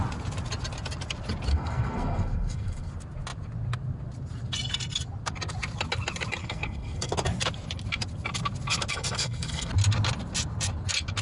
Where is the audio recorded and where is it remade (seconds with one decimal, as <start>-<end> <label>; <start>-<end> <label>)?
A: 0.0-1.5 recorded; 1.5-2.9 remade; 2.9-6.4 recorded; 6.4-7.1 remade; 7.1-8.9 recorded; 8.9-9.7 remade; 9.7-11.2 recorded